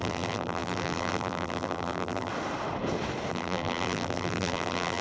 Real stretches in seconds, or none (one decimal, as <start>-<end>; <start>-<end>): 2.3-3.3